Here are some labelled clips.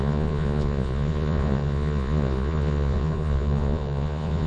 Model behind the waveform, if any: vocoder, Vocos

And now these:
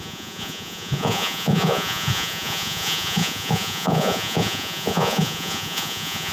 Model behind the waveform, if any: vocoder, Vocos